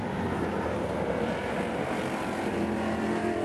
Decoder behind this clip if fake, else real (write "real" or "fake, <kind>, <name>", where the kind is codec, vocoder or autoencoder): fake, vocoder, BigVGAN v2